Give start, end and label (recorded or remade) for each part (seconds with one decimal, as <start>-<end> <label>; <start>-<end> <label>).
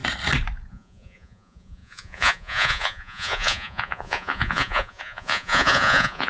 0.0-0.7 recorded; 0.7-6.3 remade